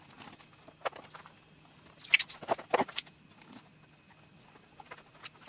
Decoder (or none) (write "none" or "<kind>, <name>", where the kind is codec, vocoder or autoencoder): none